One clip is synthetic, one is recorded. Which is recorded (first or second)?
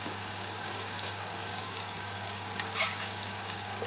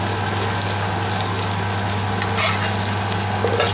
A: second